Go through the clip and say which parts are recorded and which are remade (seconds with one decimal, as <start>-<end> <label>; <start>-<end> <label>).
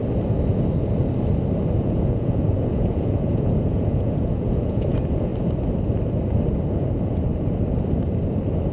0.0-1.8 recorded; 1.8-5.3 remade; 5.3-6.7 recorded; 6.7-7.3 remade; 7.3-8.7 recorded